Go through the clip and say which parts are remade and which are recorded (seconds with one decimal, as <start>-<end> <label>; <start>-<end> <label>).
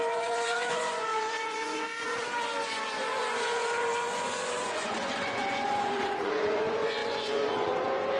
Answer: 0.0-8.2 remade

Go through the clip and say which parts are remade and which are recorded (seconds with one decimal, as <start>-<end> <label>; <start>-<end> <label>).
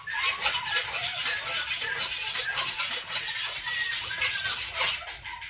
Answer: 0.0-5.5 recorded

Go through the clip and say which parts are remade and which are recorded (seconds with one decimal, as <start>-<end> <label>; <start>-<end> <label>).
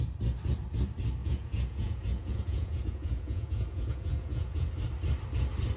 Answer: 0.0-1.2 recorded; 1.2-4.7 remade; 4.7-5.8 recorded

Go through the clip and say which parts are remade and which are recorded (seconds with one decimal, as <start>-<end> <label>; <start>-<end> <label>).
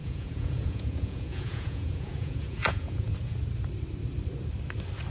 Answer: 0.0-3.1 remade; 3.1-5.1 recorded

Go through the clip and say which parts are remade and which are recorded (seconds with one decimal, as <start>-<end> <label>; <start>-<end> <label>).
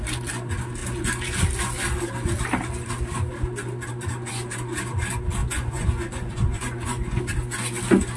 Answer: 0.0-5.4 recorded; 5.4-7.2 remade; 7.2-8.2 recorded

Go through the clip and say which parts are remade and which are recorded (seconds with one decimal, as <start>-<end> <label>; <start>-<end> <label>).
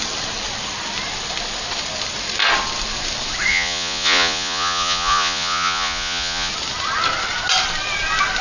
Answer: 0.0-3.5 recorded; 3.5-6.5 remade; 6.5-8.4 recorded